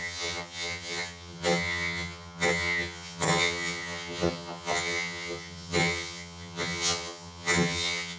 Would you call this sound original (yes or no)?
no